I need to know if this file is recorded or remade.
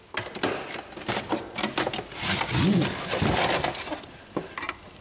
recorded